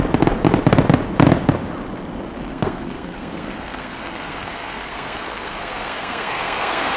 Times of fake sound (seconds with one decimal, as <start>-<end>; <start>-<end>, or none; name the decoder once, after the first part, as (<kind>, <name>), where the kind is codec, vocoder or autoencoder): 2.5-7.0 (codec, SNAC)